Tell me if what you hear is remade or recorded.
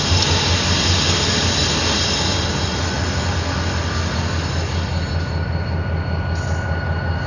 recorded